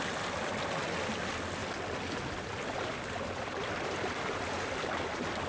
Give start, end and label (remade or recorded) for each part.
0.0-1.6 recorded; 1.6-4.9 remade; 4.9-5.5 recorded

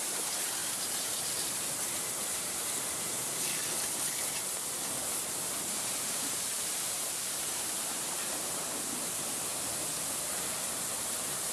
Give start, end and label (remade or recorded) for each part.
0.0-3.6 remade; 3.6-5.8 recorded; 5.8-9.5 remade; 9.5-10.2 recorded; 10.2-11.5 remade

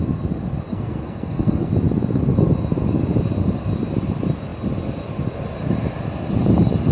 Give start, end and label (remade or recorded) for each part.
0.0-0.7 recorded; 0.7-1.7 remade; 1.7-6.9 recorded

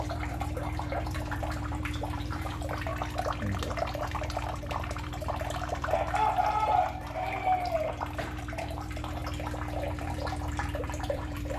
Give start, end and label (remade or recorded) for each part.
0.0-2.9 remade; 2.9-4.0 recorded; 4.0-9.2 remade; 9.2-10.0 recorded; 10.0-11.6 remade

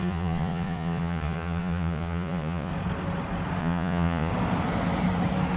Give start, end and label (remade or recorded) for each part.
0.0-2.7 remade; 2.7-3.6 recorded; 3.6-4.3 remade; 4.3-5.6 recorded